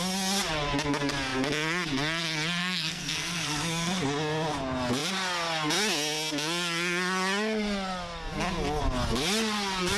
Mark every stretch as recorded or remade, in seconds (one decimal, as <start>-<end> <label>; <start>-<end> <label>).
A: 0.0-2.6 recorded; 2.6-4.0 remade; 4.0-10.0 recorded